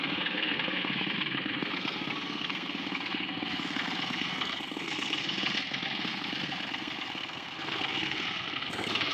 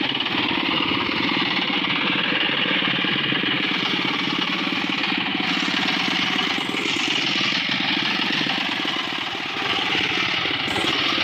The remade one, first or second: first